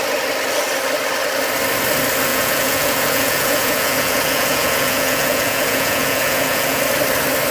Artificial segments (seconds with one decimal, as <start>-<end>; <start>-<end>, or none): 2.3-6.8